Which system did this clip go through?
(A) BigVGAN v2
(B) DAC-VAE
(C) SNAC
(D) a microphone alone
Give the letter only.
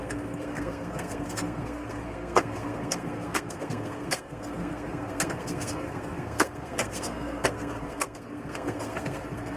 C